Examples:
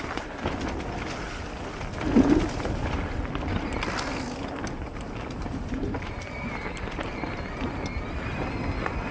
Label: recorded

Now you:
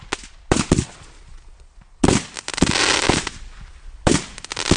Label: recorded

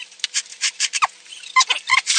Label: remade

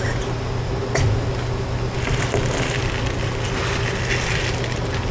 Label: recorded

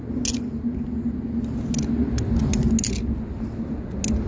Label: recorded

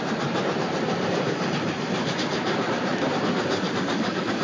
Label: remade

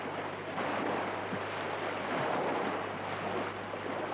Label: recorded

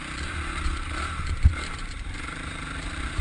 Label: remade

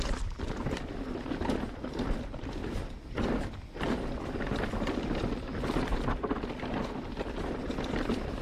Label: recorded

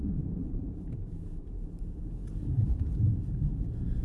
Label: remade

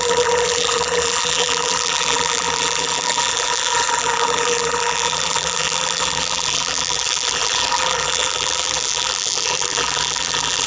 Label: remade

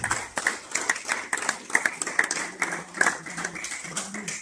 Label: recorded